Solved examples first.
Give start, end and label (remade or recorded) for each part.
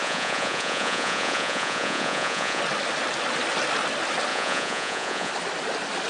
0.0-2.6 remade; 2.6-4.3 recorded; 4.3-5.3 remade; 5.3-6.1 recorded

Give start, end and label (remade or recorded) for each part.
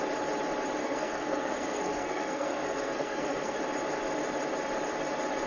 0.0-0.8 recorded; 0.8-3.6 remade; 3.6-5.5 recorded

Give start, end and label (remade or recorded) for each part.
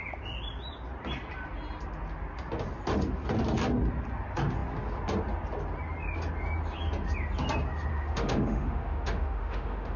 0.0-7.9 recorded; 7.9-10.0 remade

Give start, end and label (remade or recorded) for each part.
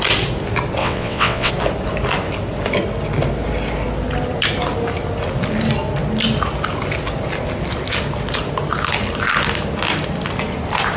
0.0-0.8 recorded; 0.8-1.5 remade; 1.5-11.0 recorded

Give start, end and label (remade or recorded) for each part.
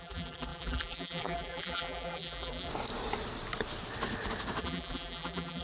0.0-2.7 remade; 2.7-4.6 recorded; 4.6-5.6 remade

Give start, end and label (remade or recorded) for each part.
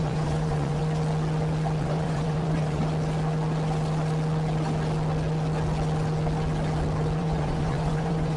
0.0-0.8 remade; 0.8-1.8 recorded; 1.8-2.8 remade; 2.8-7.2 recorded; 7.2-8.4 remade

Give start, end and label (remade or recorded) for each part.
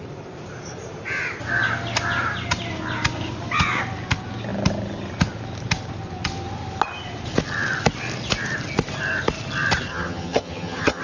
0.0-9.9 recorded; 9.9-11.0 remade